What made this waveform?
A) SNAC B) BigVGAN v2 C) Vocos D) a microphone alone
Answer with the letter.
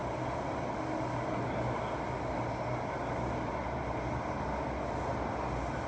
D